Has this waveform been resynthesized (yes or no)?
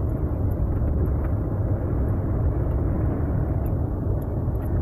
no